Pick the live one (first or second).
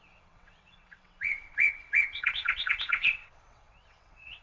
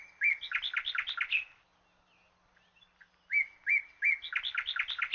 second